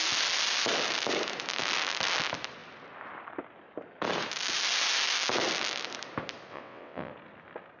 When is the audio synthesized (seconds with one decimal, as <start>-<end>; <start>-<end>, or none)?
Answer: 6.5-7.1